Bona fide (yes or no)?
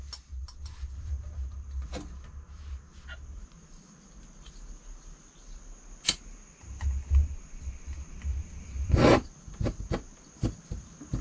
yes